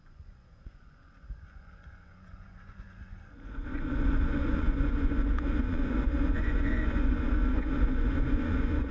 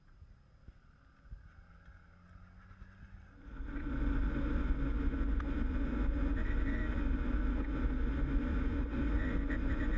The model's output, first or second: first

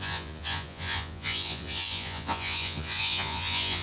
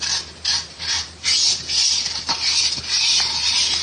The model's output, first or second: first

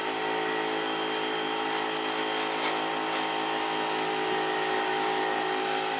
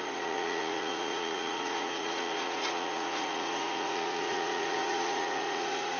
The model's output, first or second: second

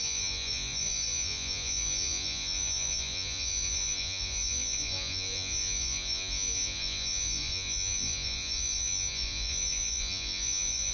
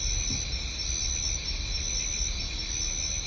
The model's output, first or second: first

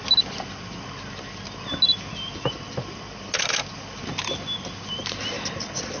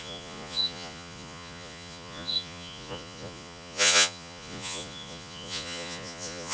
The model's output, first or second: second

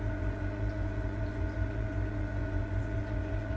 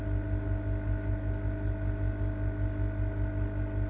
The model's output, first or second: first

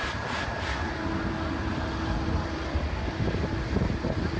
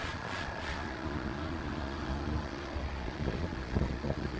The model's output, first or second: second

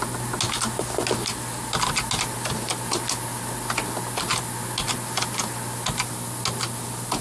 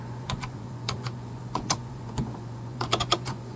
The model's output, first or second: second